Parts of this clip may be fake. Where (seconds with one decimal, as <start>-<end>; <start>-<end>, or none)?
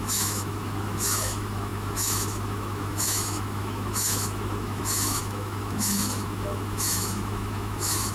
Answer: 0.0-8.1